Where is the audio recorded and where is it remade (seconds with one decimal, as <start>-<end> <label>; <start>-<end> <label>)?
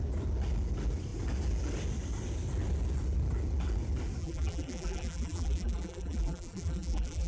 0.0-4.2 recorded; 4.2-7.3 remade